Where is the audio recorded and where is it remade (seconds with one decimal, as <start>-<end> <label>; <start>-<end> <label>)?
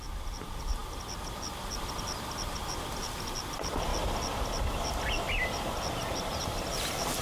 0.0-7.2 recorded